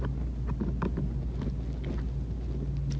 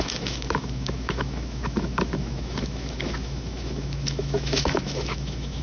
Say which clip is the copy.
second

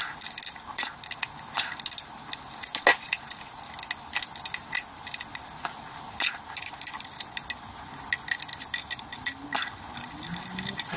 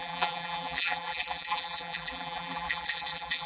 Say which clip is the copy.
second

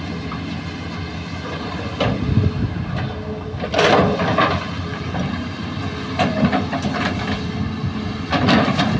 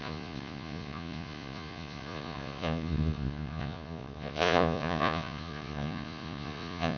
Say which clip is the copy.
second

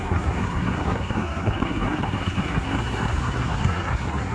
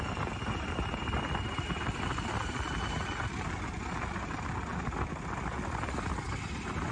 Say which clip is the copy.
first